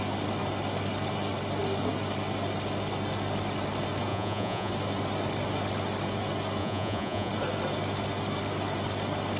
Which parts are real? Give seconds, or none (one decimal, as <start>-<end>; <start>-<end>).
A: 0.0-4.1; 4.7-6.6; 7.3-9.4